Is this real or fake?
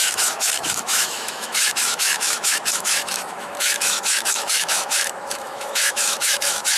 fake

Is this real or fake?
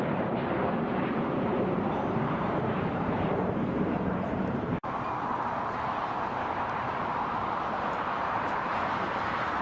fake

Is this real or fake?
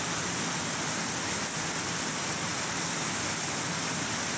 real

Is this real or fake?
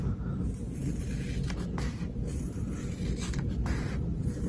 real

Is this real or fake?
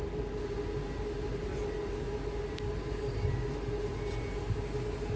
real